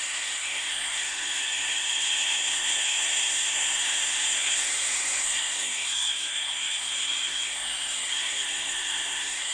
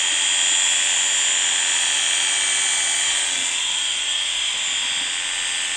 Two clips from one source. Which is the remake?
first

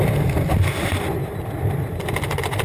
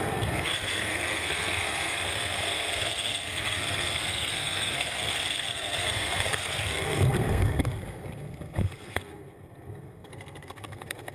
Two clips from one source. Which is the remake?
second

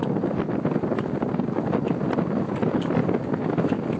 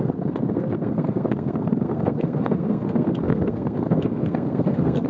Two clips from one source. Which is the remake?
second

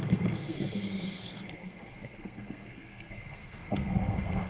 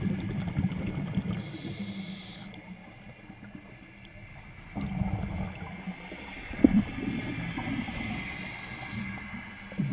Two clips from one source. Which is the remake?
first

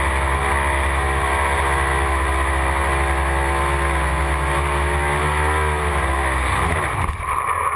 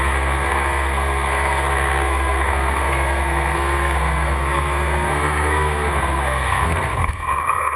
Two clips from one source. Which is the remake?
second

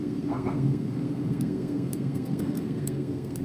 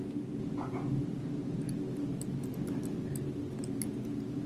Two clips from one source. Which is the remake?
first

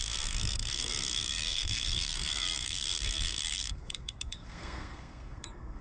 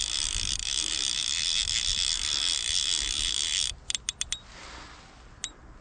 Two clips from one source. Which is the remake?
first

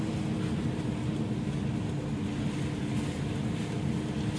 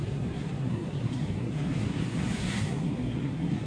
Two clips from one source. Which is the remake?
second